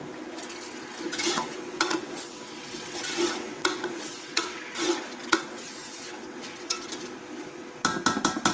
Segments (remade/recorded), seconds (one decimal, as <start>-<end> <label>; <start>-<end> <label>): 0.0-1.1 recorded; 1.1-4.6 remade; 4.6-5.3 recorded; 5.3-6.9 remade; 6.9-8.5 recorded